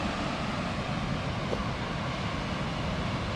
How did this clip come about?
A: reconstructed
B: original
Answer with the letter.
B